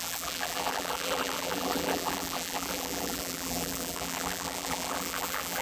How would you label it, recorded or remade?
remade